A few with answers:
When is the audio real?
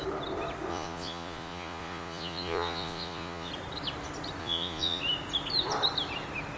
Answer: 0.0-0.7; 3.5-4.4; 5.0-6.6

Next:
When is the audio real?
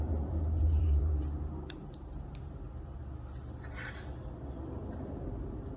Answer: 3.0-4.7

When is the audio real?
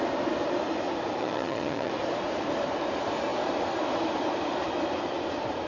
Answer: 0.0-1.2; 1.9-5.7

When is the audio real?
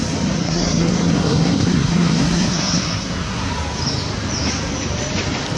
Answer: 0.0-0.4; 3.5-5.6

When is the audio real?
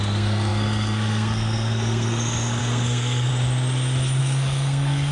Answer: 3.3-4.2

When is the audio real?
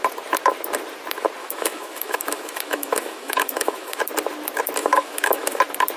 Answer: 0.0-1.4; 4.0-4.8; 5.6-6.0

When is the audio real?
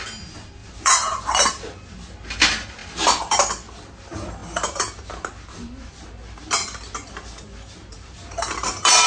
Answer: 0.0-0.6; 1.6-7.9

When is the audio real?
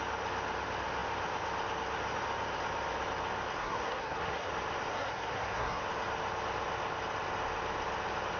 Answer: 0.0-3.6; 4.5-4.9; 5.8-8.4